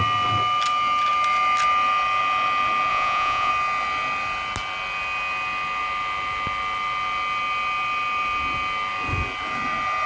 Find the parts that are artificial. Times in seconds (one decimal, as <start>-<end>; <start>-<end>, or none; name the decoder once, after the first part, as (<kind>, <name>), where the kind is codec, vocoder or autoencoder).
2.9-3.5 (vocoder, Vocos)

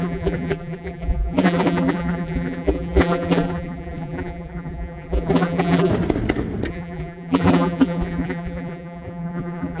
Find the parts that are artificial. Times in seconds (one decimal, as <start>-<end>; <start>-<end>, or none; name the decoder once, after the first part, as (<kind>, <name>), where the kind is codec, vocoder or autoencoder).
0.0-5.9 (vocoder, BigVGAN v2); 6.7-9.8

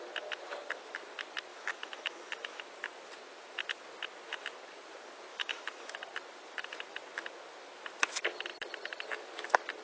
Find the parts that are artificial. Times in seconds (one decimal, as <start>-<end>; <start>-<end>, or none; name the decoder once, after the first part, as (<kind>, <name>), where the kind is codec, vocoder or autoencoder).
1.5-2.6 (autoencoder, DAC-VAE); 5.3-6.0

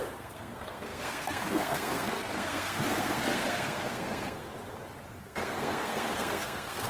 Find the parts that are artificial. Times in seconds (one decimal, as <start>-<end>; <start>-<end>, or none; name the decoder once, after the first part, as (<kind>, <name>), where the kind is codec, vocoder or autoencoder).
0.0-4.5 (codec, SNAC); 5.2-6.9

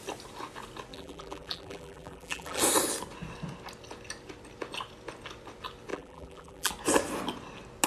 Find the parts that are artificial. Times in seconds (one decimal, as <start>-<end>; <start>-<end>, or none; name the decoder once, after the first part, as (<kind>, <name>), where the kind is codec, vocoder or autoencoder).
0.9-2.6 (vocoder, BigVGAN v2); 5.9-6.7